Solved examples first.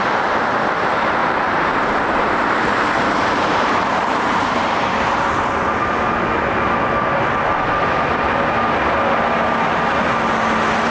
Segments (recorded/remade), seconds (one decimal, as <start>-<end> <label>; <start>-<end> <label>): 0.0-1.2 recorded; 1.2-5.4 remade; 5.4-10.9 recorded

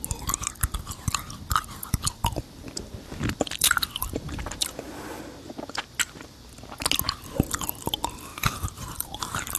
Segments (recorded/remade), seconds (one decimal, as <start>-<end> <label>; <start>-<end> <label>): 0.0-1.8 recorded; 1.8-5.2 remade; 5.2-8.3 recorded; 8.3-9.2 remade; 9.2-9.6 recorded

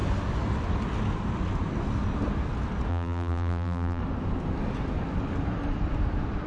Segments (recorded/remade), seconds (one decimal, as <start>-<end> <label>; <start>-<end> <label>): 0.0-2.9 recorded; 2.9-4.0 remade; 4.0-6.5 recorded

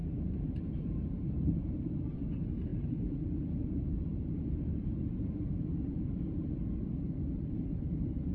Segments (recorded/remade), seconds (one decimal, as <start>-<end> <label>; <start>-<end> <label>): 0.0-8.3 remade

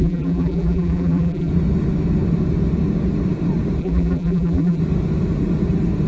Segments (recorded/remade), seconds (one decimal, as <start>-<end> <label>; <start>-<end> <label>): 0.0-1.5 remade; 1.5-3.8 recorded; 3.8-4.8 remade; 4.8-6.1 recorded

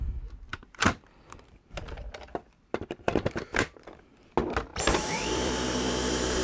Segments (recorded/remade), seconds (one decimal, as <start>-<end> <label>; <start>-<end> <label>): 0.0-0.5 recorded; 0.5-4.3 remade; 4.3-4.7 recorded; 4.7-5.5 remade; 5.5-6.4 recorded